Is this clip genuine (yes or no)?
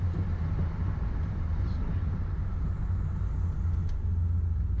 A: yes